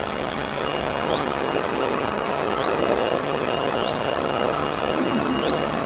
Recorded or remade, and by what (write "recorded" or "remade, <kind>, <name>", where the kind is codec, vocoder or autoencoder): remade, vocoder, HiFi-GAN